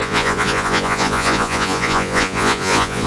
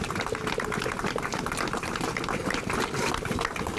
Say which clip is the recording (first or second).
second